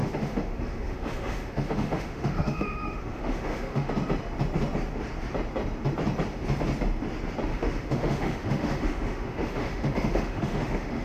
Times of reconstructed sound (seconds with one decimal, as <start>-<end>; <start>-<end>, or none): 0.0-3.9; 7.5-11.0